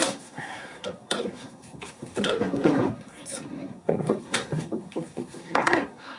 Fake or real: fake